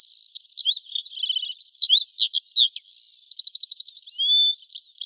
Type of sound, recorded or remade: recorded